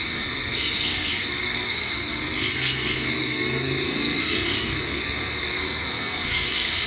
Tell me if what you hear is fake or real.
fake